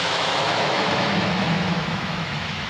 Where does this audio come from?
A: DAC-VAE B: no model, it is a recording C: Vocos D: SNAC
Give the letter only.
A